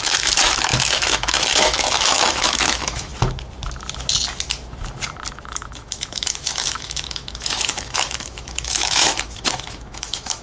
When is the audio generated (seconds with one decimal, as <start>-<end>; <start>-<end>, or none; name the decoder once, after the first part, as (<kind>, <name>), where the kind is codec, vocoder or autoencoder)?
0.0-3.1 (autoencoder, DAC-VAE); 5.3-10.4